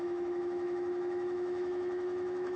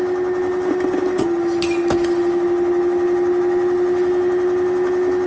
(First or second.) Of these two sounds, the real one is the second